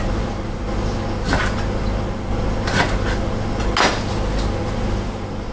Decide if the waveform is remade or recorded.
recorded